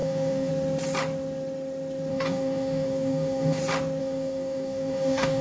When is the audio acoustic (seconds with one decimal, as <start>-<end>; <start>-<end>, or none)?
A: 0.5-2.1; 3.6-4.0

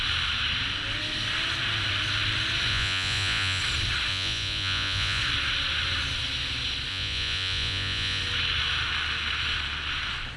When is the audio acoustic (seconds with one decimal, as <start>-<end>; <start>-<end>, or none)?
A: 0.0-2.7; 3.6-4.1; 5.2-6.9; 8.2-10.4

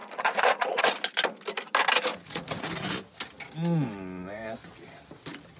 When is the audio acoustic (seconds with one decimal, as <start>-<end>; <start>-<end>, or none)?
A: 0.8-2.1; 2.7-5.6